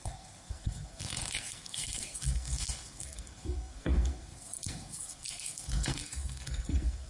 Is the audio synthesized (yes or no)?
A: yes